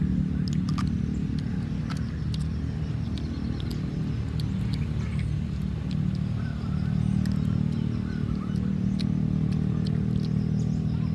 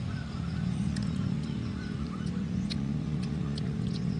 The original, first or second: first